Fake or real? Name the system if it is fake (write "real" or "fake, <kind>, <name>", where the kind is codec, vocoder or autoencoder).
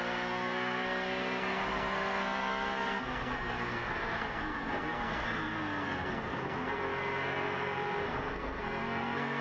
fake, codec, SNAC